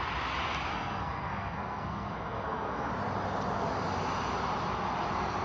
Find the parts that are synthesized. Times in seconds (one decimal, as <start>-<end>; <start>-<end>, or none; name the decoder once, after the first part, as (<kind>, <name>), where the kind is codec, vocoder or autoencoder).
0.7-2.9 (codec, SNAC)